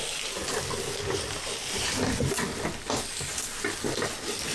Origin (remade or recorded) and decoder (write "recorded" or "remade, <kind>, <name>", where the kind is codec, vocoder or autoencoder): recorded